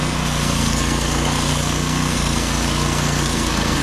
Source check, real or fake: fake